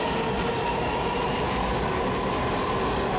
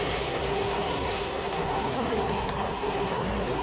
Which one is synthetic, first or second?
second